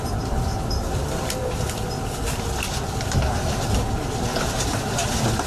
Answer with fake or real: real